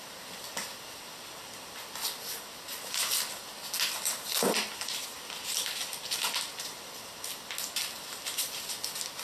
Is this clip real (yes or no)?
yes